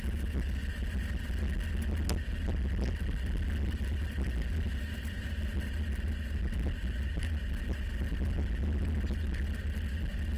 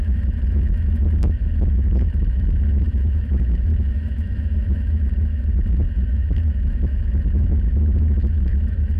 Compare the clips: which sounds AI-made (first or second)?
second